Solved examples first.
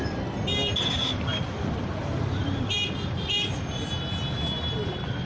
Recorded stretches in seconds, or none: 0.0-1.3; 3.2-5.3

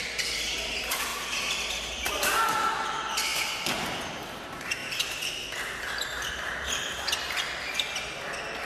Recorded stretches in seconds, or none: 0.0-8.7

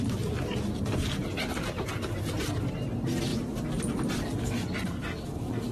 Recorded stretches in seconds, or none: 0.0-5.7

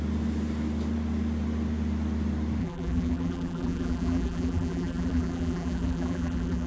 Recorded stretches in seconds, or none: 0.0-2.6

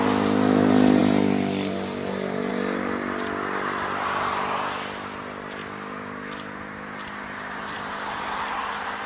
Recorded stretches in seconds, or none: 0.0-9.1

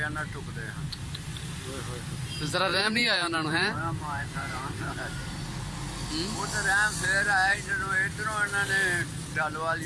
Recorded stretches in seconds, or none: 0.0-2.7; 5.6-9.9

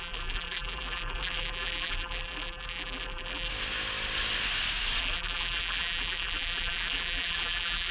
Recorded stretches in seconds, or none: 3.5-5.0

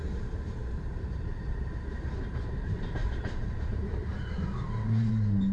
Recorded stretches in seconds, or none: 0.0-0.6; 1.7-3.0; 5.1-5.5